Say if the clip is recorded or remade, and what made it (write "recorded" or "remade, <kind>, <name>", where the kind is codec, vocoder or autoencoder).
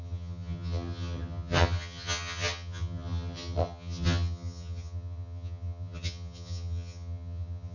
remade, vocoder, HiFi-GAN